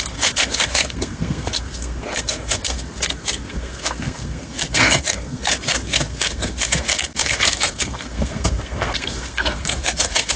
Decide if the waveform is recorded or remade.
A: remade